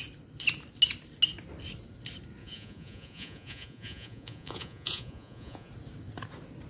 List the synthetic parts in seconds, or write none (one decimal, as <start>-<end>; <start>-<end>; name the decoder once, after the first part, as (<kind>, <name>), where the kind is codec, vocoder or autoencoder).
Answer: 2.4-5.7 (vocoder, Vocos)